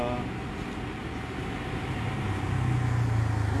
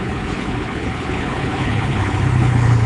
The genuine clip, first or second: first